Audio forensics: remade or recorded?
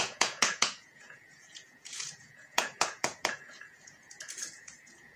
remade